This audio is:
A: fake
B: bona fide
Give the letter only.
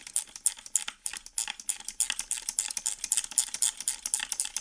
B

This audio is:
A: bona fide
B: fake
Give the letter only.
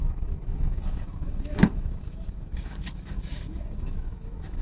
B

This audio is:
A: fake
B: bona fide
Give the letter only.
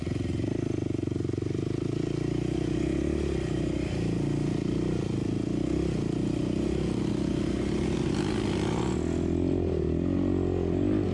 B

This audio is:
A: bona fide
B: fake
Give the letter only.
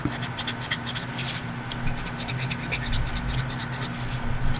A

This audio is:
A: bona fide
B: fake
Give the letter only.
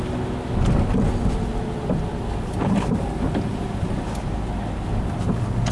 A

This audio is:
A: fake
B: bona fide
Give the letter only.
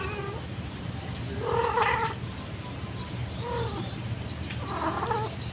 B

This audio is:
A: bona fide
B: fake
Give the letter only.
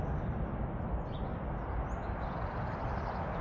A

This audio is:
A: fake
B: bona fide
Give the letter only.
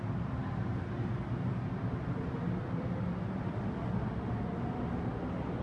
B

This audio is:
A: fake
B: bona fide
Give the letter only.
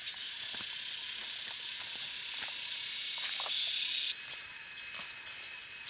B